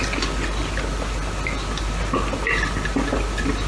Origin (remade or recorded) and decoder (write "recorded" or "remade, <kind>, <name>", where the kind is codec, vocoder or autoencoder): recorded